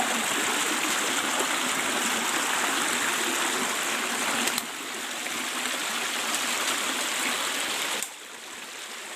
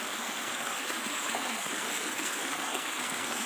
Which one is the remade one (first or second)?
second